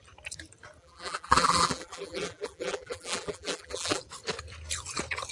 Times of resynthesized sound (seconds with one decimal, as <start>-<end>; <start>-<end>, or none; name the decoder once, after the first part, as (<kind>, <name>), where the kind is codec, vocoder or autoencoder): 0.8-4.0 (vocoder, BigVGAN v2)